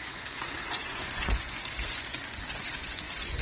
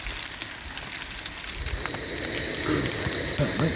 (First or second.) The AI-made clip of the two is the first